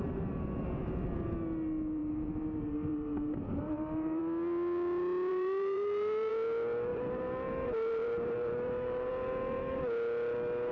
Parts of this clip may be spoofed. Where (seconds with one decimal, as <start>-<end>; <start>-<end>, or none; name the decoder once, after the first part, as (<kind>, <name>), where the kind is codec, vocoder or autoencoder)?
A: 2.0-4.2 (vocoder, BigVGAN v2); 5.3-6.3; 6.9-9.1

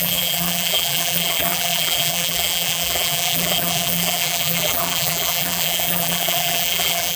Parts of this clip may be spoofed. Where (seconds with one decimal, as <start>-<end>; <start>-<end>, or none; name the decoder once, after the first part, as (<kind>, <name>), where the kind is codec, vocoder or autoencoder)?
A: 0.0-7.2 (vocoder, BigVGAN v2)

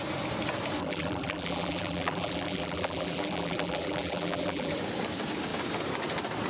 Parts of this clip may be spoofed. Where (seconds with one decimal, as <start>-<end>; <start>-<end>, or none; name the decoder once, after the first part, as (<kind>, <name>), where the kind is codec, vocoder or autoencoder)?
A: 0.8-4.7 (vocoder, BigVGAN v2)